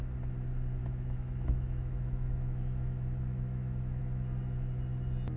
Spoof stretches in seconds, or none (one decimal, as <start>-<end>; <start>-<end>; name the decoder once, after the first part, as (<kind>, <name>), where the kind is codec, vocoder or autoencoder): 0.8-4.0 (autoencoder, DAC-VAE)